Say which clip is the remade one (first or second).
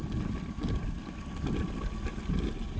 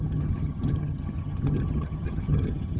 second